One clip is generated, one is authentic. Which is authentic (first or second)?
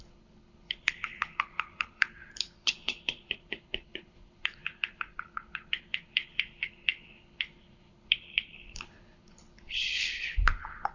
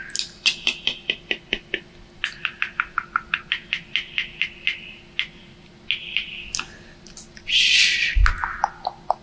second